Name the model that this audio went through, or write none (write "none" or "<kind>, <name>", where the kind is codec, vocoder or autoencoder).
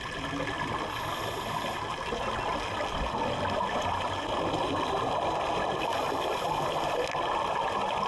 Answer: none